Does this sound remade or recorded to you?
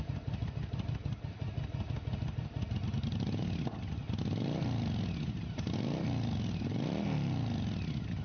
recorded